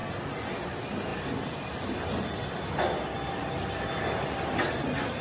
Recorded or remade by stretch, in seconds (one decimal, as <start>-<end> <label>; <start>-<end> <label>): 0.0-5.2 recorded